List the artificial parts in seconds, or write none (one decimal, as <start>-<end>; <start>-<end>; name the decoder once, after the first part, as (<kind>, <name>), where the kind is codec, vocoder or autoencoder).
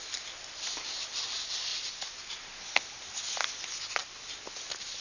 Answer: none